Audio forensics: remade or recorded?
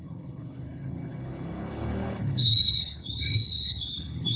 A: remade